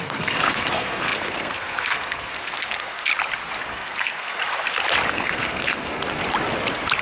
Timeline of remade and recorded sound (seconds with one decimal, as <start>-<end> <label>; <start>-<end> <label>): 0.0-3.1 remade; 3.1-3.7 recorded; 3.7-4.4 remade; 4.4-5.1 recorded; 5.1-6.2 remade; 6.2-7.0 recorded